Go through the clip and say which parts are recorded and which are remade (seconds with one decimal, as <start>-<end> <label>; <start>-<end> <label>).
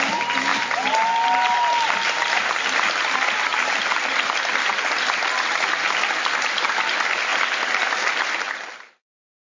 0.0-3.5 recorded; 3.5-4.1 remade; 4.1-4.7 recorded; 4.7-5.8 remade; 5.8-7.3 recorded; 7.3-8.2 remade; 8.2-9.5 recorded